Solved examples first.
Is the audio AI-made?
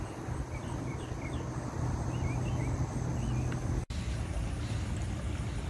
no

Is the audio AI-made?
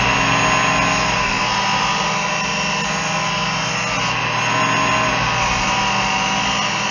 no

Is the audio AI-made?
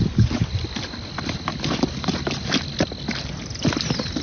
no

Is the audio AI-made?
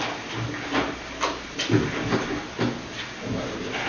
no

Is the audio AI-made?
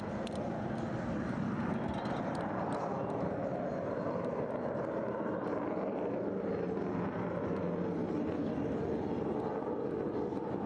no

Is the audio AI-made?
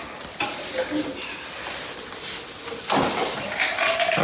no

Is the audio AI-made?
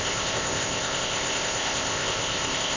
yes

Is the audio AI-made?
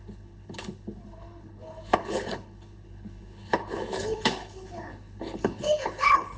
yes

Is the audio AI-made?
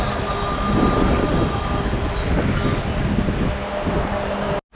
no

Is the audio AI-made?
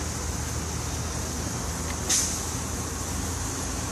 no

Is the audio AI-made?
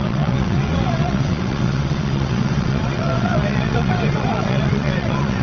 yes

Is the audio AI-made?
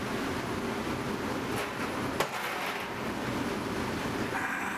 no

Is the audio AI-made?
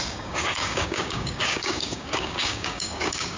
yes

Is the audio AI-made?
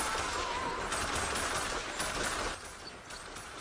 no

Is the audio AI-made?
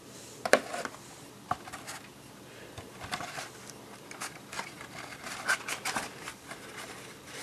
yes